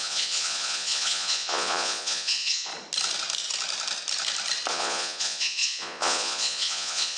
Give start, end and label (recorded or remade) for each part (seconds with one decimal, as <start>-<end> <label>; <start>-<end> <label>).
0.0-2.7 remade; 2.7-4.7 recorded; 4.7-7.2 remade